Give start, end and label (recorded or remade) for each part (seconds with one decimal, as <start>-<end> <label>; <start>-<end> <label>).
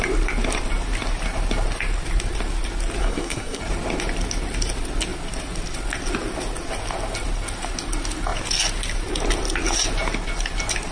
0.0-3.0 recorded; 3.0-3.6 remade; 3.6-10.9 recorded